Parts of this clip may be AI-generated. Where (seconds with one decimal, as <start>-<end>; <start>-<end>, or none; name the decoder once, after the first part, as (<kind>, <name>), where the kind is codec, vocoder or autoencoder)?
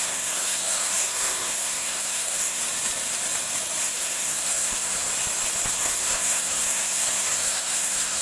0.0-2.6 (codec, SNAC); 3.8-5.1; 5.7-8.2